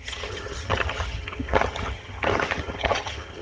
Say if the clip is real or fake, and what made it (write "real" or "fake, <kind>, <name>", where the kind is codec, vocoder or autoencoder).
fake, vocoder, HiFi-GAN